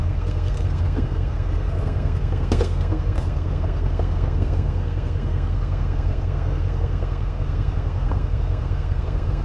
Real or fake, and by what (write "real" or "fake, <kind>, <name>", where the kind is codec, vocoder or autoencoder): fake, codec, SNAC